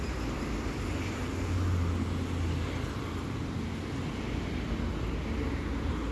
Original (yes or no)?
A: yes